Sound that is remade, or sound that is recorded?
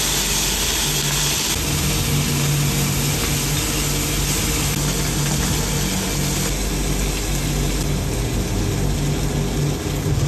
recorded